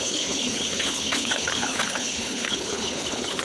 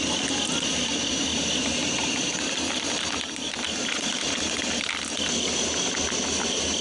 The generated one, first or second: first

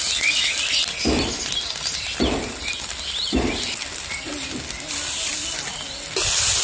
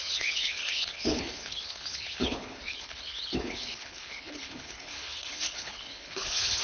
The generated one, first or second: second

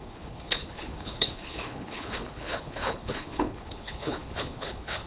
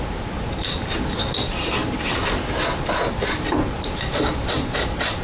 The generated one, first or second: first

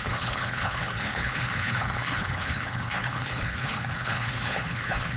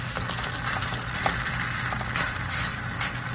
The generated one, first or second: first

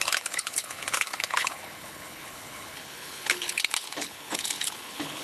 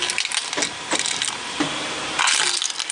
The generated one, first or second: first